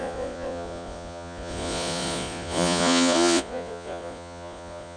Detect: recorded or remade remade